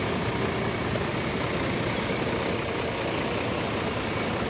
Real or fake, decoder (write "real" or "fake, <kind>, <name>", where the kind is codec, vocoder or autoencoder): real